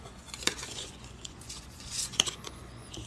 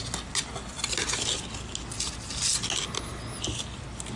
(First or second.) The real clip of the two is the second